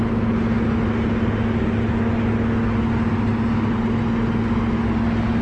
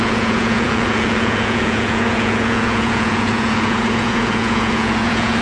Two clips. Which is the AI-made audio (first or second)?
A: second